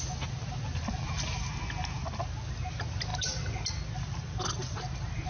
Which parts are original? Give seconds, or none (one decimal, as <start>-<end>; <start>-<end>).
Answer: 0.0-5.3